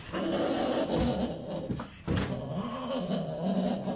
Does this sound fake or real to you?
real